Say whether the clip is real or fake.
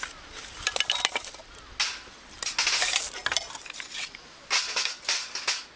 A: real